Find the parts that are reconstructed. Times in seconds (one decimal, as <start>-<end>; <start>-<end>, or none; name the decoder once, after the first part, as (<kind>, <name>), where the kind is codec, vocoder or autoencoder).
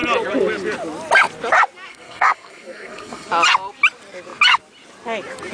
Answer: 1.9-3.3 (codec, SNAC)